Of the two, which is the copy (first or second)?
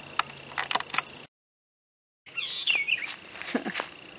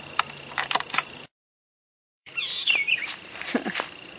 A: second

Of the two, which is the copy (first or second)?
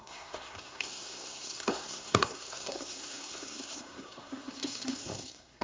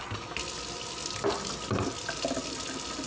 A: first